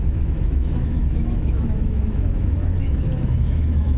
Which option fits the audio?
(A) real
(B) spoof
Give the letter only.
B